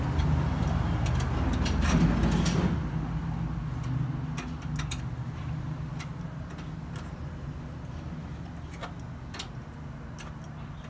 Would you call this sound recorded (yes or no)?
yes